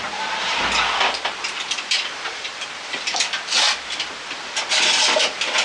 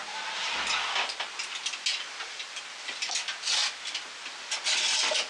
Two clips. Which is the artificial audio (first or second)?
first